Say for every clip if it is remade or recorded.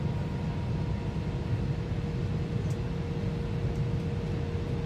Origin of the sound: recorded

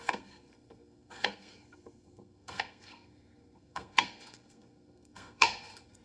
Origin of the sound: remade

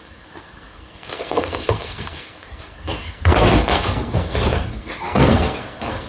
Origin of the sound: remade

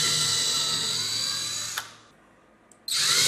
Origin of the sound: recorded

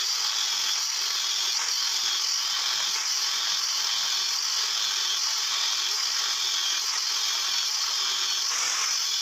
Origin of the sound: recorded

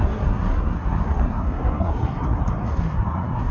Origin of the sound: remade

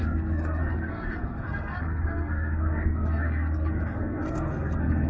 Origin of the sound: remade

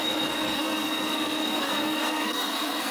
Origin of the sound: remade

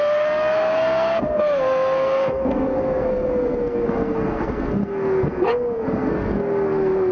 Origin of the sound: remade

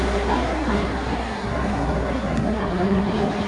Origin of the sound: remade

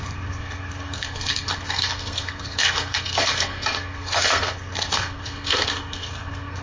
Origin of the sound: remade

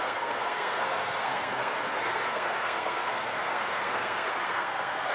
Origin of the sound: remade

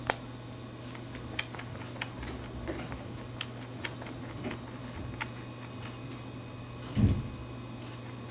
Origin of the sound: recorded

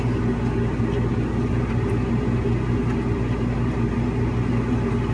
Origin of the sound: recorded